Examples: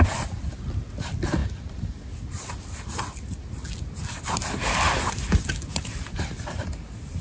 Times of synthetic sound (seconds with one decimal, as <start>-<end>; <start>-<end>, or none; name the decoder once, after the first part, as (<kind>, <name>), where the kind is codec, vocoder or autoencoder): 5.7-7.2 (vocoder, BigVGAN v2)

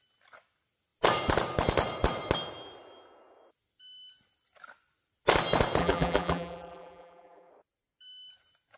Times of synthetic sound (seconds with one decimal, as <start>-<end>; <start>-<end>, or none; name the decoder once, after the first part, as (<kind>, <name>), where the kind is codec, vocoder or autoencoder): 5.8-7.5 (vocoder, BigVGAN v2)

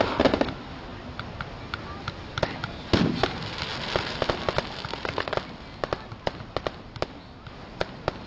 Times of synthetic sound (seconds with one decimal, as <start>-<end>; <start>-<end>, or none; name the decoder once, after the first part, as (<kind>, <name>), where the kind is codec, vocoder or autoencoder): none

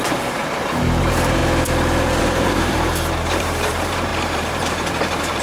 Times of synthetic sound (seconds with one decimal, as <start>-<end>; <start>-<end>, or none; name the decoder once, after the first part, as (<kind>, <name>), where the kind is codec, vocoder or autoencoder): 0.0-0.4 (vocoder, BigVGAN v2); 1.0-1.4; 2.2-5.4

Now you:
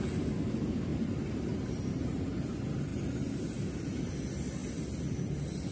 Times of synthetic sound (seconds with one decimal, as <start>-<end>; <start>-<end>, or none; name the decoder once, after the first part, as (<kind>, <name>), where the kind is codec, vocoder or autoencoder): 0.9-2.2 (vocoder, BigVGAN v2)